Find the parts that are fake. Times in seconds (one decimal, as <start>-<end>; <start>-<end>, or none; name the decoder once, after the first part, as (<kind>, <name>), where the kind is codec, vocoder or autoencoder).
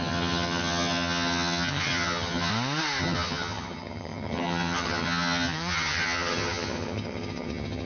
0.0-2.5 (vocoder, HiFi-GAN); 3.0-7.9